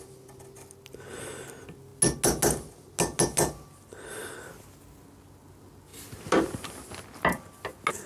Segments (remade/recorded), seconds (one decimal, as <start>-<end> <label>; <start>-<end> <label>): 0.0-8.1 recorded